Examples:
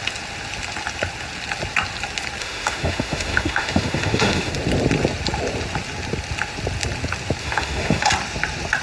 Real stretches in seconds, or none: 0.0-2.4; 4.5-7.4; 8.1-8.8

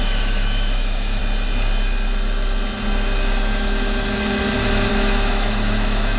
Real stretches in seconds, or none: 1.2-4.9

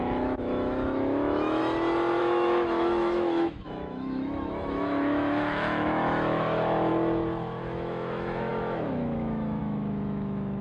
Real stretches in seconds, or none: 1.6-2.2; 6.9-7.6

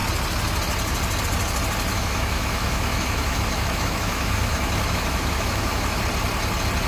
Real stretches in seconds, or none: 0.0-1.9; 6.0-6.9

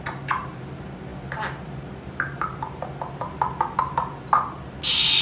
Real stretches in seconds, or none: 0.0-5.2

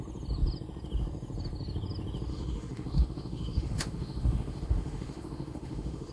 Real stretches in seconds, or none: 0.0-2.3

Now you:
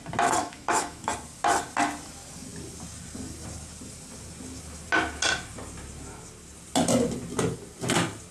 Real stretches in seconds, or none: 0.0-0.4; 1.0-8.3

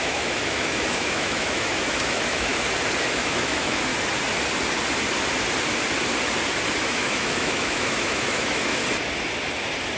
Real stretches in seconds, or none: 2.5-3.1; 3.9-6.8; 8.8-10.0